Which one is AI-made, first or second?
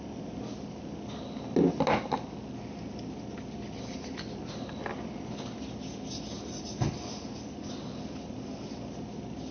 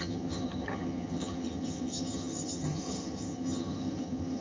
second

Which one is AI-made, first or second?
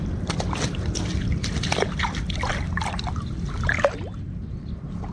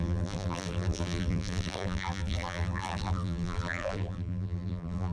second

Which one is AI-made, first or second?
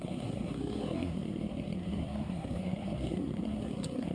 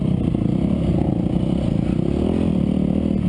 first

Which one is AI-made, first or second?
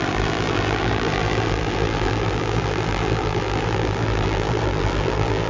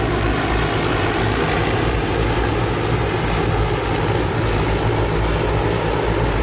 first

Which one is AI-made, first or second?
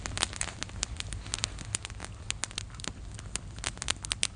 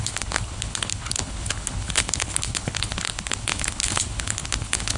second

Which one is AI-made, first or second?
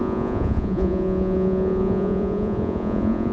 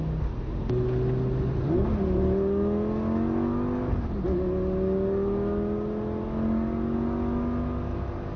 first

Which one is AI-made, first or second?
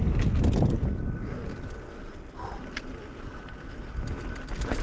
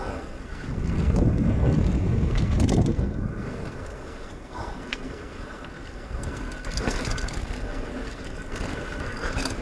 second